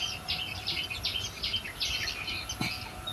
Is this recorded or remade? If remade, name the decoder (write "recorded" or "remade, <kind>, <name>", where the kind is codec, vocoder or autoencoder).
recorded